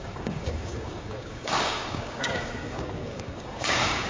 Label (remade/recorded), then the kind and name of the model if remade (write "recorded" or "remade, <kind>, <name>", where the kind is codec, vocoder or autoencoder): remade, codec, DAC